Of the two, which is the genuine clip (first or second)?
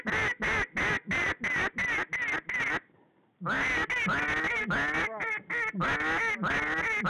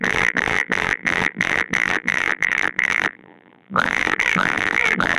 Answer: first